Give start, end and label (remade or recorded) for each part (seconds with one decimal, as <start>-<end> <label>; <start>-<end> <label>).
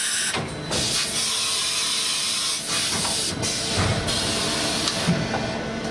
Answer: 0.0-5.9 recorded